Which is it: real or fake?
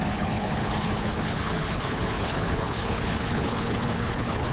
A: fake